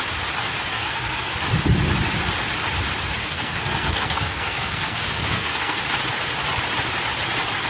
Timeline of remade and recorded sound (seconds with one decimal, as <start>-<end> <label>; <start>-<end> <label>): 0.0-0.7 recorded; 0.7-1.3 remade; 1.3-3.2 recorded; 3.2-5.8 remade; 5.8-7.7 recorded